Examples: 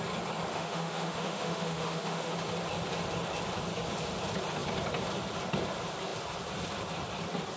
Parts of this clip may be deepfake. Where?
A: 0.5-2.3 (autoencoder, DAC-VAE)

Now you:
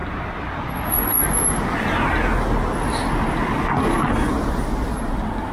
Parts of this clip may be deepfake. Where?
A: none

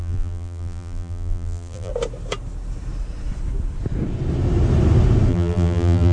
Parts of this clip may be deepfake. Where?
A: 0.0-1.9 (vocoder, BigVGAN v2); 5.3-6.1

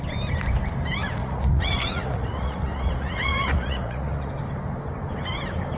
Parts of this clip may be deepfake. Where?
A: 1.2-4.3 (vocoder, Vocos)

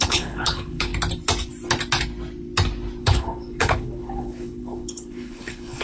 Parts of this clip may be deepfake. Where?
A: 0.0-0.9 (codec, HILCodec); 3.0-5.8

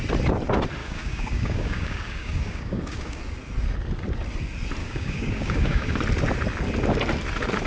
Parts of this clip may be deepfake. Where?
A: 0.8-3.2 (codec, DAC); 4.8-6.0

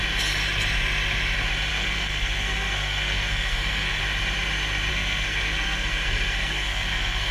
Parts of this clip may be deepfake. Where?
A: 1.7-4.0 (codec, SNAC); 4.9-7.3